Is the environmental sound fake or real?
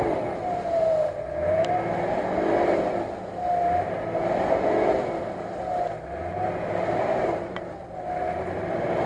real